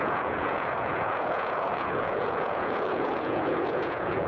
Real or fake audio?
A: fake